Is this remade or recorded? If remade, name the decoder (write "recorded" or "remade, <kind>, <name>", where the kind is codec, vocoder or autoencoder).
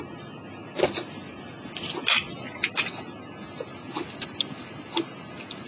recorded